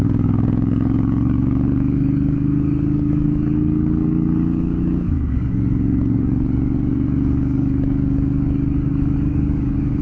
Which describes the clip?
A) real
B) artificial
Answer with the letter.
B